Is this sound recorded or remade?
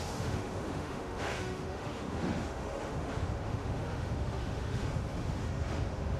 remade